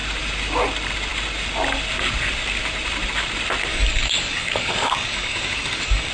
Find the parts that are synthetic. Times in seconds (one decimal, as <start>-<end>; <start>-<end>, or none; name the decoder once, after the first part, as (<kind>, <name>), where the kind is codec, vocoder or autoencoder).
3.7-6.1 (codec, DAC)